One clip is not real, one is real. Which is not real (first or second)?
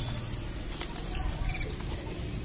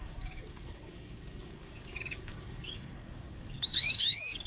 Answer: second